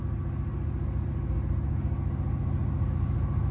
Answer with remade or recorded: recorded